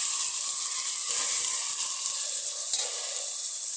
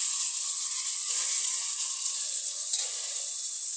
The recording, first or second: first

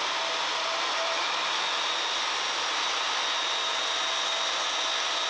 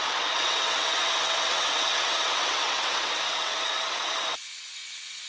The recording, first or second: first